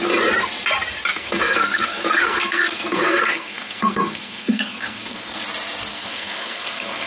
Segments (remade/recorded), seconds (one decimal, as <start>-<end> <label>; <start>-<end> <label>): 0.0-1.1 recorded; 1.1-5.4 remade; 5.4-5.9 recorded; 5.9-7.1 remade